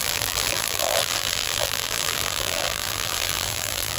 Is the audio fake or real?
fake